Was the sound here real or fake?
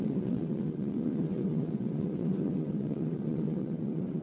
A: fake